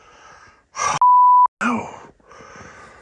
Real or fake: real